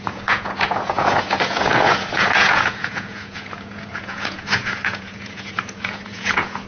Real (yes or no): no